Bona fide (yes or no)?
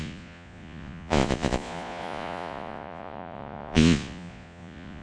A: no